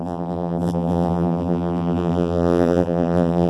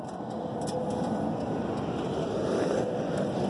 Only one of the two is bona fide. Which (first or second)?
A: second